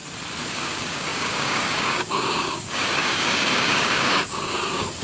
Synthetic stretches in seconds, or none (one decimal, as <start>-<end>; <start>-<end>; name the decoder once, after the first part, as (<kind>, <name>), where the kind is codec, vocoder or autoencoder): 0.5-5.0 (codec, DAC)